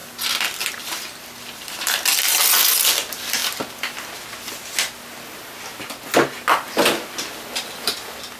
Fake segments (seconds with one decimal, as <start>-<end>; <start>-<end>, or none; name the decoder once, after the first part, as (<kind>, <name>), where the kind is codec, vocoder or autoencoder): none